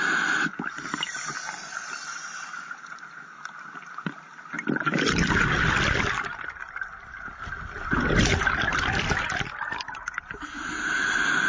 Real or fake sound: real